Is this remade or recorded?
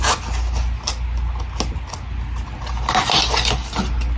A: recorded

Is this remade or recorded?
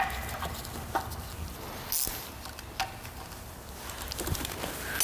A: recorded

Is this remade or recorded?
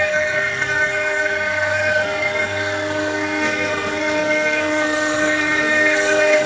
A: remade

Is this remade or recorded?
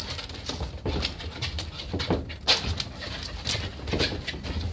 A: recorded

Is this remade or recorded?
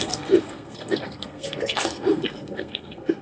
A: remade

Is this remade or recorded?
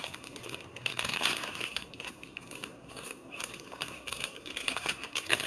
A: remade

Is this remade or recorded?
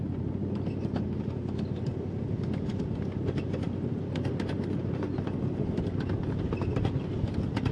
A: recorded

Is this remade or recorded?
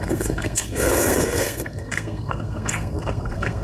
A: remade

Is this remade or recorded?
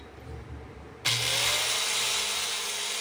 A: recorded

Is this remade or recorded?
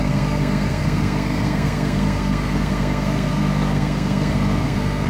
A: remade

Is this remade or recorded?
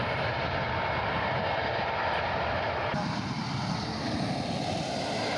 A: recorded